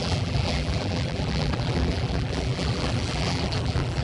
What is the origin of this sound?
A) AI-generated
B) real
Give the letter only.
A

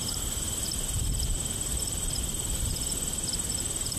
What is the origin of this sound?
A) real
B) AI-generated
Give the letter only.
B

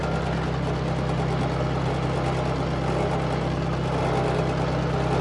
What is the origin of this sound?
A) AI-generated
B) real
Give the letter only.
B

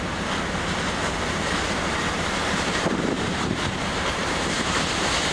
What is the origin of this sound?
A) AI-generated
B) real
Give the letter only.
A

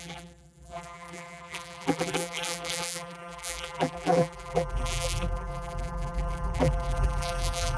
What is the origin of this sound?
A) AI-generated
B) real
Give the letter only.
A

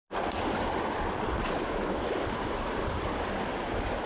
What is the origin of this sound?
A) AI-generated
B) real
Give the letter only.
A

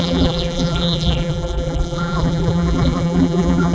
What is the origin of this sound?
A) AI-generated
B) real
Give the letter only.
A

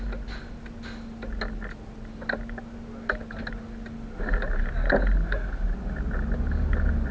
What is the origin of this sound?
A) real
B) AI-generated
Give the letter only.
A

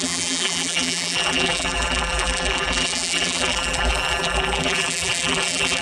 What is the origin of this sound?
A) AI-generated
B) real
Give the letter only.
A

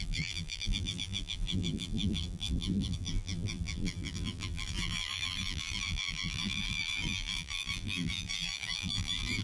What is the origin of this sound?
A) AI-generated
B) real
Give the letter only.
A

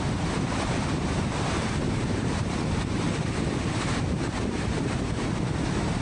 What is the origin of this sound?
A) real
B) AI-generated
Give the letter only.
B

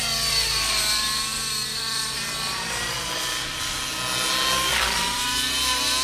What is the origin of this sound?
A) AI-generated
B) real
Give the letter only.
B